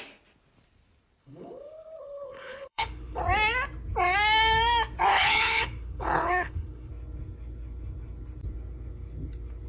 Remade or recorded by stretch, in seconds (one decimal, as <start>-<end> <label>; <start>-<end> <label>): 0.0-1.2 recorded; 1.2-3.2 remade; 3.2-5.1 recorded; 5.1-6.9 remade; 6.9-9.7 recorded